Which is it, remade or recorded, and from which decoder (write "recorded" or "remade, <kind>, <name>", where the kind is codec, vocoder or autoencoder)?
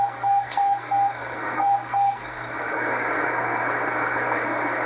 remade, codec, SNAC